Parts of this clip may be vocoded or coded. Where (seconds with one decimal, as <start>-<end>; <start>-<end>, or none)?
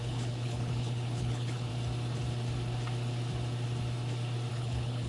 0.0-1.7; 4.5-5.1